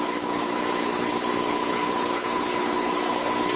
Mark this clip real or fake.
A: fake